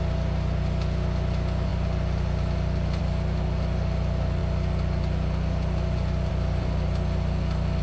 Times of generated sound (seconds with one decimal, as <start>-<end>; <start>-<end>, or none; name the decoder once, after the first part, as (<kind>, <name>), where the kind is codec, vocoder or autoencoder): none